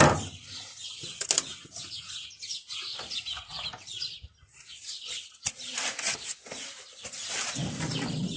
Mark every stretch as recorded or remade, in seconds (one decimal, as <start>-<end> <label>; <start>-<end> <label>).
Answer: 0.0-1.5 recorded; 1.5-2.3 remade; 2.3-8.4 recorded